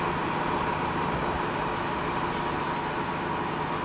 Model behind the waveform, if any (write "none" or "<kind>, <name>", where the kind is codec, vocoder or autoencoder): none